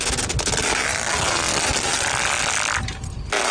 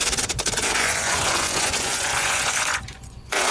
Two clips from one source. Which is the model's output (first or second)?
second